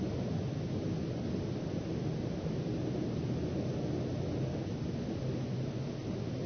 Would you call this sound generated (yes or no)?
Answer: no